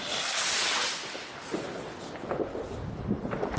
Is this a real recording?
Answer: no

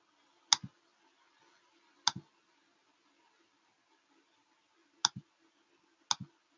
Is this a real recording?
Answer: yes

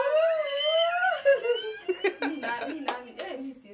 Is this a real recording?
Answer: yes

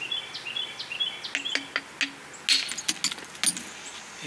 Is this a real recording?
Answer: yes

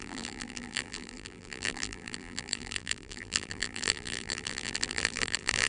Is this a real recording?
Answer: no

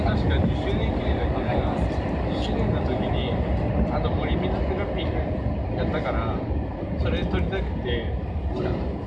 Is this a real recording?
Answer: yes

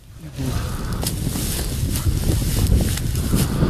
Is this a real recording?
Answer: yes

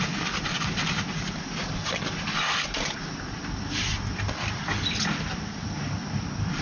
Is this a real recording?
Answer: no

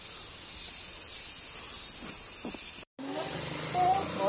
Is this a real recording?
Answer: yes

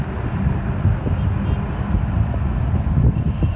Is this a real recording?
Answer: yes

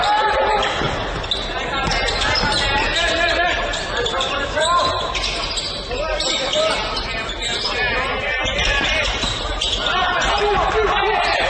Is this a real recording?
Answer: no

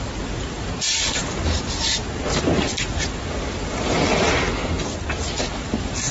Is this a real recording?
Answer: yes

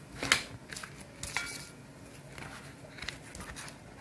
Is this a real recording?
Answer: yes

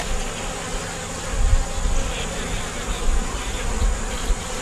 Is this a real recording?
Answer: yes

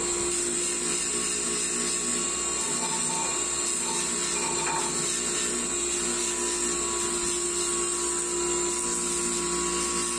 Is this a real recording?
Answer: yes